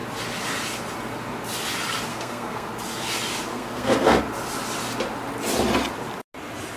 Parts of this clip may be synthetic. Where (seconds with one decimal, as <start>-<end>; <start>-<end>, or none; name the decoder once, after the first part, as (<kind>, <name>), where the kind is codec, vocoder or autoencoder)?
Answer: 2.1-2.7 (codec, SNAC); 3.5-4.2

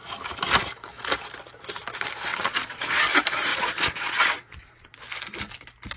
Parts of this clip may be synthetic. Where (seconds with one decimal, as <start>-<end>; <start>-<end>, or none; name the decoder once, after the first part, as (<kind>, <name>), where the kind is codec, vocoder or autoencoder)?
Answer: 2.3-3.0 (vocoder, Vocos); 3.5-5.0